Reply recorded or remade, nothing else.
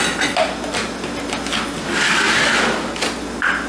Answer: recorded